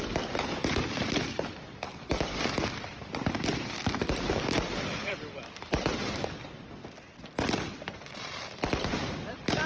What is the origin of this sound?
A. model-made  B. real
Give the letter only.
A